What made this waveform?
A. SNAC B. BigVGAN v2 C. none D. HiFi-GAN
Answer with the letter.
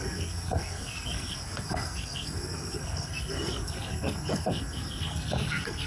A